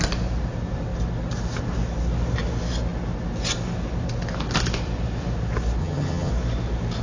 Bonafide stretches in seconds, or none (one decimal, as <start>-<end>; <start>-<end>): 0.0-5.8; 6.3-7.0